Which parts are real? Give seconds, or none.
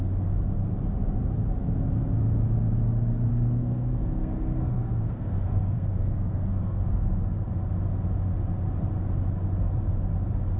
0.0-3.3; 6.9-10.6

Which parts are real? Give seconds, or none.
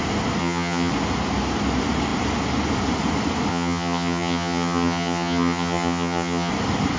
0.0-0.4; 0.9-3.5; 6.5-7.0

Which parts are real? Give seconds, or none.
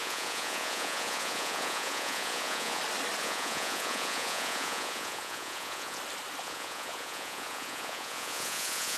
2.8-3.2; 6.0-6.4